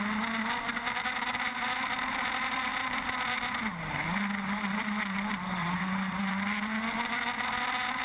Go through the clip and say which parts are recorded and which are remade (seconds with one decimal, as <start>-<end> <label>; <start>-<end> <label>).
0.0-5.6 recorded; 5.6-6.3 remade; 6.3-8.0 recorded